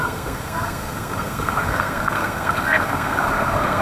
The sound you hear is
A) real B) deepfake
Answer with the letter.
B